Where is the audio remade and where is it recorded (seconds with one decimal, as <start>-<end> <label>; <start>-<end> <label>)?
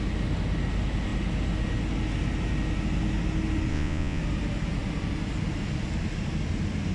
0.0-3.7 recorded; 3.7-4.2 remade; 4.2-6.9 recorded